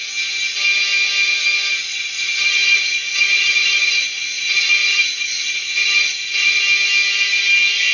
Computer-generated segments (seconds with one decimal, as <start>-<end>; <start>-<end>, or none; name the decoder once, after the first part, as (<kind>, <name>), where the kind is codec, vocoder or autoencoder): 1.9-6.6 (vocoder, Vocos)